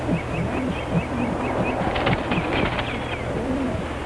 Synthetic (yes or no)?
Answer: no